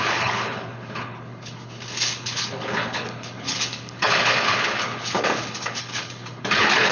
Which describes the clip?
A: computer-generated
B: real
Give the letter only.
A